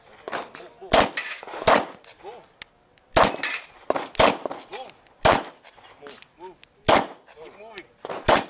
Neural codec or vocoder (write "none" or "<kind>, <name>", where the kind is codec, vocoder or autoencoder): none